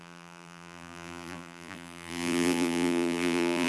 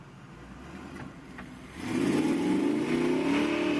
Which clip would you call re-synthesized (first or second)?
first